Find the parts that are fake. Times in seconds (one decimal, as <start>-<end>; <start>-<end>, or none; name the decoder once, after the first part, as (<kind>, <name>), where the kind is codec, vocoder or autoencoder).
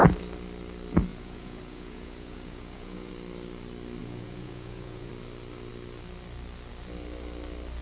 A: 1.1-3.1 (vocoder, Vocos); 4.0-5.1